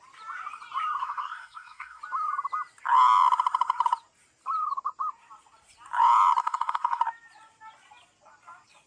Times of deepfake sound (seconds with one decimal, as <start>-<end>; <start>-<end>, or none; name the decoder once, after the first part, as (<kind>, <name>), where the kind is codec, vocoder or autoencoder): 1.0-2.0 (codec, SNAC); 6.4-7.0